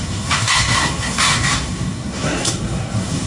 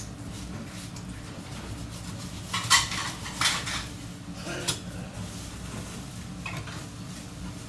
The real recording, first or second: second